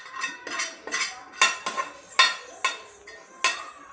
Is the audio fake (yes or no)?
no